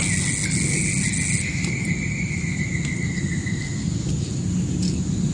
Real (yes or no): yes